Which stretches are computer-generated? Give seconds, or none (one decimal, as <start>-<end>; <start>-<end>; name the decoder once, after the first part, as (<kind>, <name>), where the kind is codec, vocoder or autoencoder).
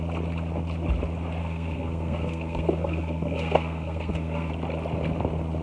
1.4-4.5 (codec, SNAC)